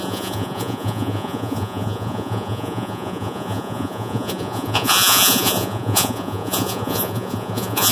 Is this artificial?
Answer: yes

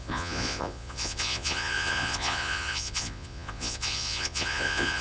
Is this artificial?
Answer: yes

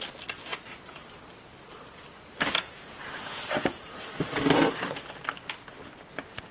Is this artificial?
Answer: no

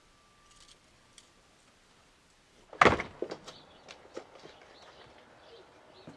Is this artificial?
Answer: no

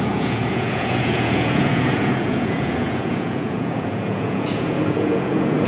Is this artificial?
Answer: yes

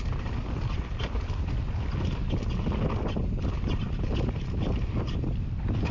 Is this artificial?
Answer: no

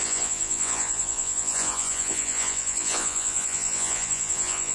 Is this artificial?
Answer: yes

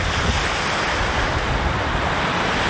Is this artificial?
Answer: no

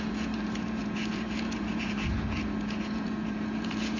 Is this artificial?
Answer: yes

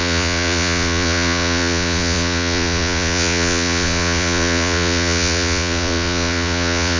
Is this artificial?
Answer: yes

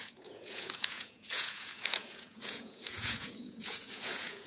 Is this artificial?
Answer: yes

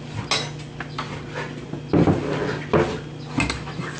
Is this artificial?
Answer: no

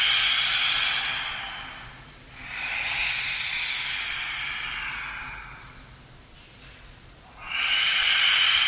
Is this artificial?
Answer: no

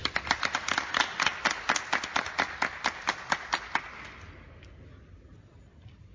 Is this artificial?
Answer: no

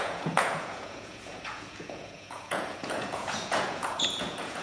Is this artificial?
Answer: yes